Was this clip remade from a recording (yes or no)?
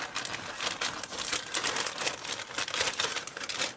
yes